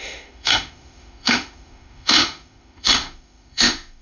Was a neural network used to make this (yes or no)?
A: yes